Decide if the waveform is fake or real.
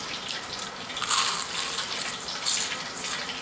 real